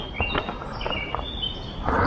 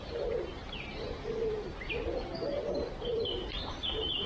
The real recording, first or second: first